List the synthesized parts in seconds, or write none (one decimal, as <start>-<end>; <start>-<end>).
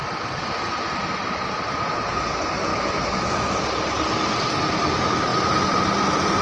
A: 2.7-3.6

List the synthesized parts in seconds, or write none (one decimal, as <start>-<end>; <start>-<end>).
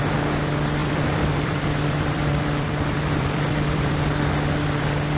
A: 0.8-3.9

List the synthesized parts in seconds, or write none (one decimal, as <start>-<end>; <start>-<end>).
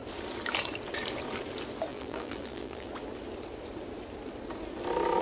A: 1.9-2.9